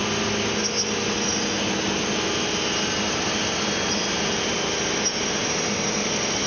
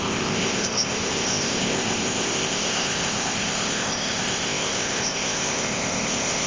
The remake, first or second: second